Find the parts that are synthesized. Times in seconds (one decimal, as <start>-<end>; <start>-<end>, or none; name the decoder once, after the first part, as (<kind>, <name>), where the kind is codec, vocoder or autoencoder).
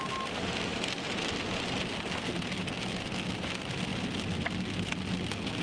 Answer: none